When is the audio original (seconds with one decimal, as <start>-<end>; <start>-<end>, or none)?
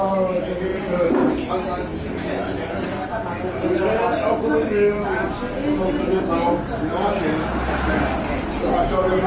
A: 0.0-1.9; 3.1-9.3